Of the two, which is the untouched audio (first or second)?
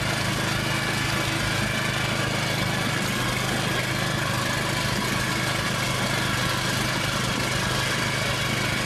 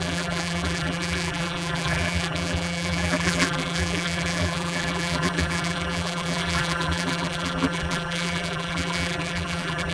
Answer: first